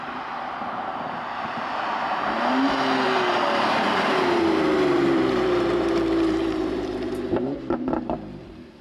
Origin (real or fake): fake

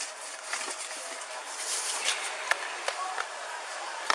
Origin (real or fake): real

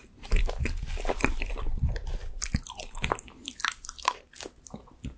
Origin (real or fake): real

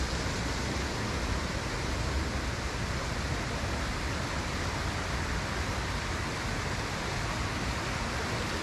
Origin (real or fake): real